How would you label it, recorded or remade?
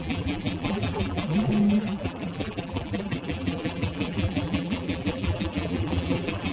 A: remade